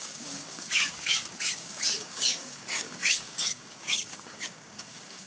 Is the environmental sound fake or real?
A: fake